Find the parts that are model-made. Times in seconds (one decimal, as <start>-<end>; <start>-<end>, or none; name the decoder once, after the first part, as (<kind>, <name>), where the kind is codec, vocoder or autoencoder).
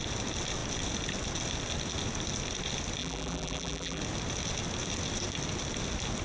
3.0-4.0 (vocoder, BigVGAN v2)